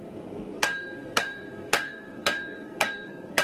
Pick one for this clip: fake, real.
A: fake